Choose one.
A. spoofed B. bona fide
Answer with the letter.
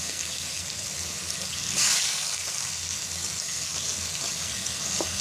A